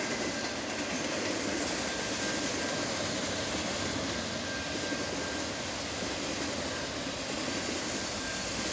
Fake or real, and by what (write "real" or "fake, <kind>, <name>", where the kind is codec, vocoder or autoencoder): real